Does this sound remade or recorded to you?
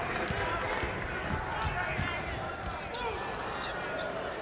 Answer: recorded